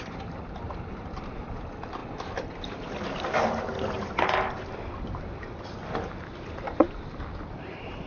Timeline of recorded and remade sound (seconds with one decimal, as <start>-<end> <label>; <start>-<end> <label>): 0.0-8.1 recorded